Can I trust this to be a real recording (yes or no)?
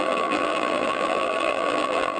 no